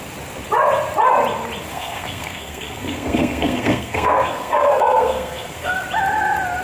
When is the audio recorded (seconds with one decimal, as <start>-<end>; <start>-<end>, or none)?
0.0-1.7; 5.7-6.6